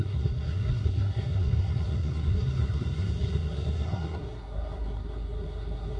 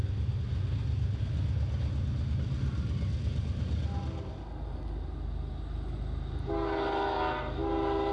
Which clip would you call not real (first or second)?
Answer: first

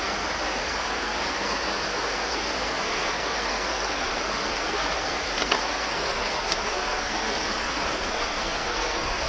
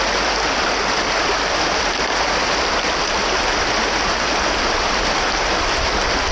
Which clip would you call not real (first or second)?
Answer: first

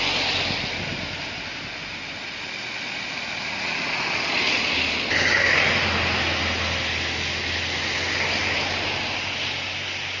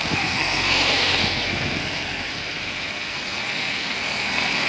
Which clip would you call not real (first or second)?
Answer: second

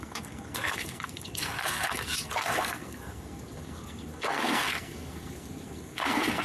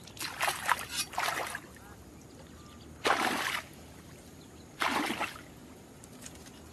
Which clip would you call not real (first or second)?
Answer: first